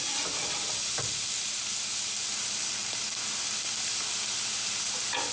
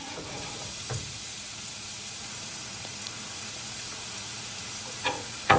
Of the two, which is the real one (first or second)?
first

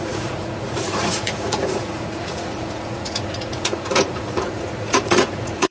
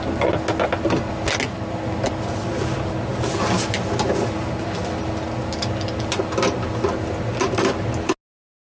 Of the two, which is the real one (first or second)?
second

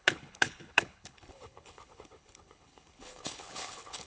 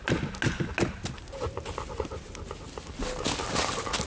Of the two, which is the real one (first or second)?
second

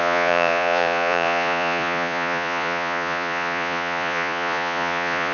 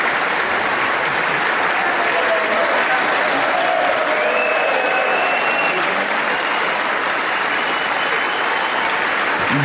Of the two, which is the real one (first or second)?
second